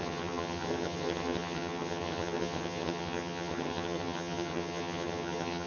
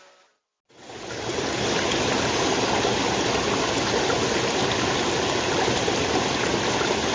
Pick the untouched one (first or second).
second